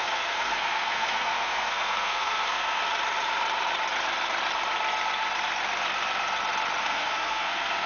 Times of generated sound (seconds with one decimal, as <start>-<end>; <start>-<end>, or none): 0.0-2.8; 6.8-7.9